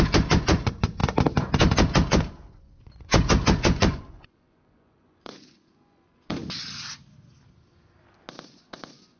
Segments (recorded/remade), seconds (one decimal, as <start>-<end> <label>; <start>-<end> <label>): 0.0-1.0 remade; 1.0-2.6 recorded; 2.6-6.4 remade; 6.4-8.4 recorded; 8.4-9.2 remade